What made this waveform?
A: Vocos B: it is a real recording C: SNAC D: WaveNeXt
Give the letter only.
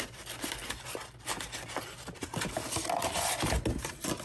B